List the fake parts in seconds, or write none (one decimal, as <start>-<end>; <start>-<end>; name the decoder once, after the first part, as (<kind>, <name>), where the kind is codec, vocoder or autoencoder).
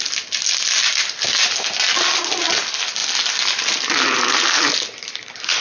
none